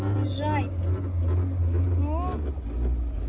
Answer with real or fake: real